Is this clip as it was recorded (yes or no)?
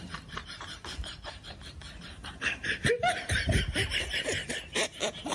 no